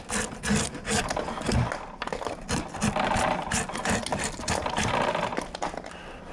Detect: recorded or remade recorded